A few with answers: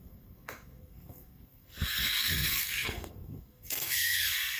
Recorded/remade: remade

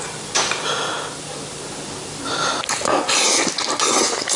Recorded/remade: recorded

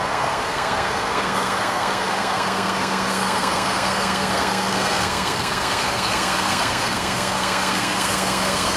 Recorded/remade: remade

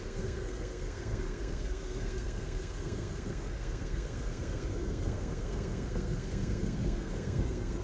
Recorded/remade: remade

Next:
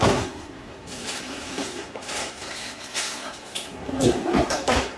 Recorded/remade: remade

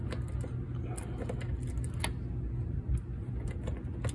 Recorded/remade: recorded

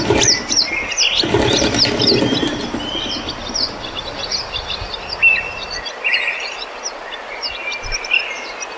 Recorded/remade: recorded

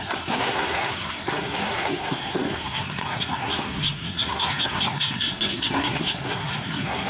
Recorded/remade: remade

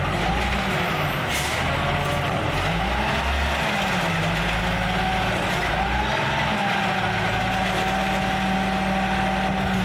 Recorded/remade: recorded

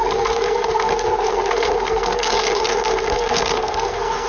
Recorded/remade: remade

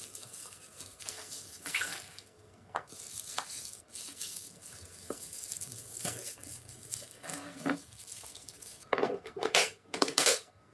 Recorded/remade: remade